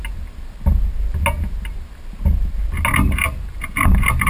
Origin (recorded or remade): recorded